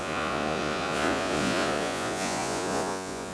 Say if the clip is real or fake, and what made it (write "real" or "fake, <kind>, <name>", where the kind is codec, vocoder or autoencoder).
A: fake, vocoder, Vocos